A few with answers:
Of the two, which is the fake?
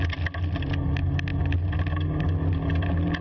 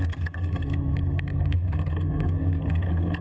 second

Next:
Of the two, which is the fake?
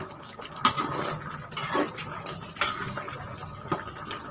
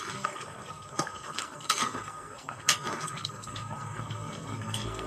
second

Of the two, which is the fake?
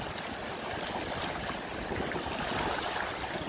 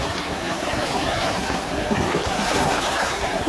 second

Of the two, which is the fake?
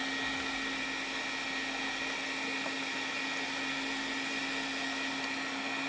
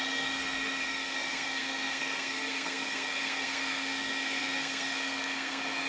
second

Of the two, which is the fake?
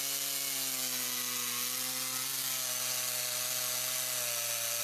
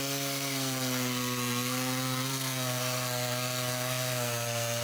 second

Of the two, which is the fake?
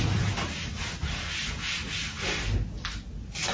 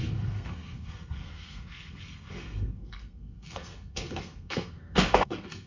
second